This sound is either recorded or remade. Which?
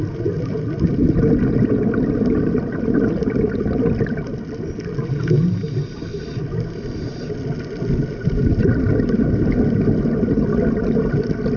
recorded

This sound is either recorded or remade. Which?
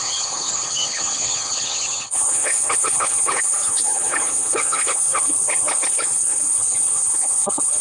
remade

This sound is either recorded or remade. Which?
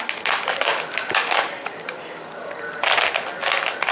recorded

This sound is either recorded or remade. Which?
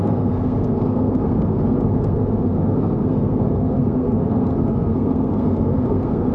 remade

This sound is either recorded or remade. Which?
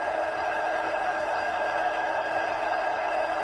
remade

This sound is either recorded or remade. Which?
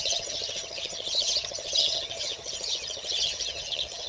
remade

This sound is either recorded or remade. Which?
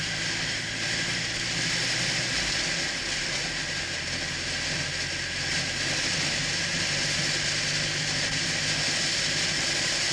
recorded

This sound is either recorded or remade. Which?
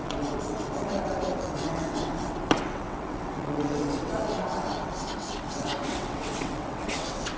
remade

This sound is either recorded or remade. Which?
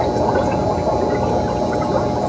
recorded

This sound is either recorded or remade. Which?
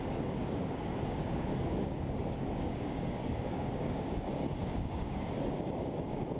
remade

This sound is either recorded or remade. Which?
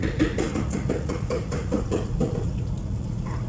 remade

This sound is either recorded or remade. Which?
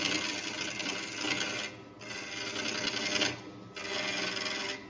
recorded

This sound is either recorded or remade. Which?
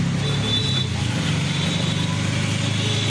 recorded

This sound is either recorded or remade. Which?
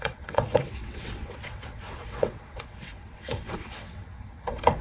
remade